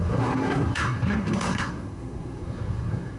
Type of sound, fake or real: fake